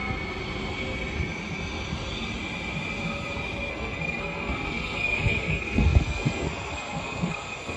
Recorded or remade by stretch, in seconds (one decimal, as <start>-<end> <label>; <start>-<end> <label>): 0.0-3.7 recorded; 3.7-7.8 remade